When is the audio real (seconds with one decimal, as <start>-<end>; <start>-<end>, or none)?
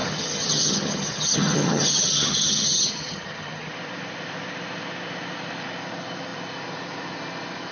3.7-7.7